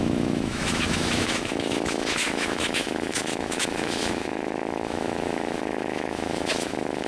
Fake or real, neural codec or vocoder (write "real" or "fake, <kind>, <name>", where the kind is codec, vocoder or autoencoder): fake, autoencoder, DAC-VAE